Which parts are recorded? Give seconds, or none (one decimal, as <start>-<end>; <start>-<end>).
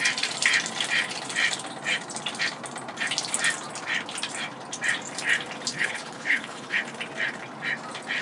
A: 0.0-5.7; 6.8-8.2